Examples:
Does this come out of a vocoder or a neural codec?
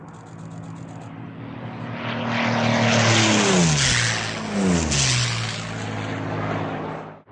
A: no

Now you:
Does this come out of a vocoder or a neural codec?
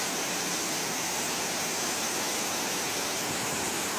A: no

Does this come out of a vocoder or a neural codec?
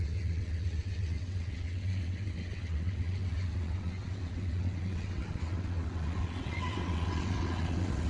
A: yes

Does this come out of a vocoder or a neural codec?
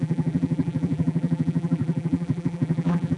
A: yes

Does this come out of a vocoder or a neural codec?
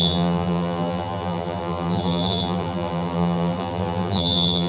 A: yes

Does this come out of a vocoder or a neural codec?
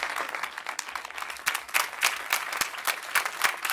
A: no